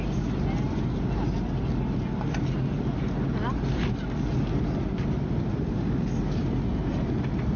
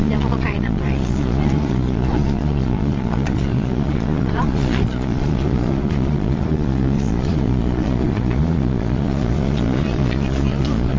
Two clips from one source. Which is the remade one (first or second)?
second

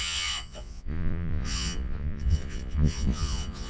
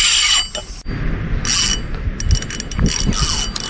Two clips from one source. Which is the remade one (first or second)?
first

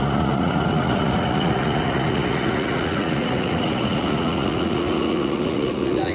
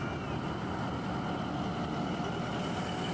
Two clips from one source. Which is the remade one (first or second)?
first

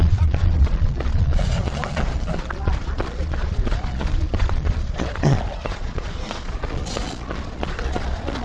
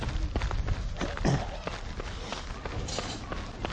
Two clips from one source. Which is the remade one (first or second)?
first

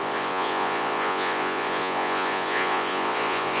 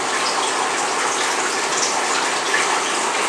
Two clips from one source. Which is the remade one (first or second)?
first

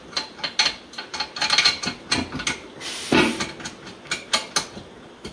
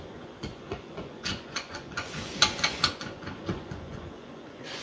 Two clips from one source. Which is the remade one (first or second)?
second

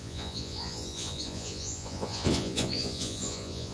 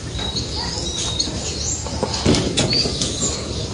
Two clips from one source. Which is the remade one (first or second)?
first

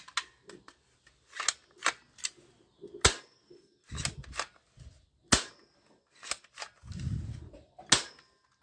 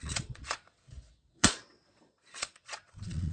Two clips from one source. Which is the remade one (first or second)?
second